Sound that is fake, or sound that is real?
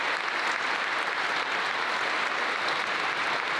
real